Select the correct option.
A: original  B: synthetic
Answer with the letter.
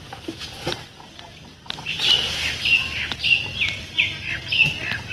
A